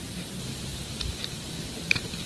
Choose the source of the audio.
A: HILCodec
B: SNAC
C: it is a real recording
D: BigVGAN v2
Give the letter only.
C